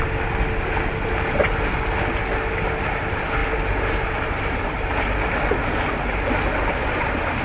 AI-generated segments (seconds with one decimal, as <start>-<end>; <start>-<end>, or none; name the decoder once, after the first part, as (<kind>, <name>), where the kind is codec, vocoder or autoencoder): none

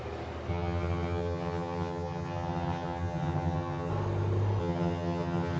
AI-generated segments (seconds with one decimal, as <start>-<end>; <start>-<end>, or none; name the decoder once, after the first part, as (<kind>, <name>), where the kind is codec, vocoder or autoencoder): 0.5-3.9 (vocoder, HiFi-GAN); 4.6-5.6

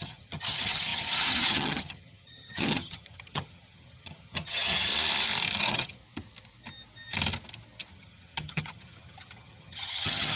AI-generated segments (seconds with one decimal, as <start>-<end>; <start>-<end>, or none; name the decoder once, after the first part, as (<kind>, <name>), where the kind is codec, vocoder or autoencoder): 0.0-4.9 (vocoder, HiFi-GAN); 5.6-6.0; 7.9-10.4

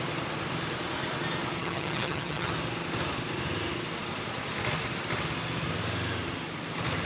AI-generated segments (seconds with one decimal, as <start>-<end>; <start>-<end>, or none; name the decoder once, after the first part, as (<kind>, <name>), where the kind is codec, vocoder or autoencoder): 1.6-2.5 (vocoder, HiFi-GAN)

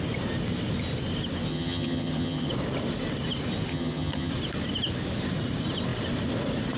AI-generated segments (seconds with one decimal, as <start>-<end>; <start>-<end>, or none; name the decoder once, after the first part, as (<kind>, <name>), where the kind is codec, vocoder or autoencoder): 1.5-2.5 (vocoder, HiFi-GAN); 3.7-4.3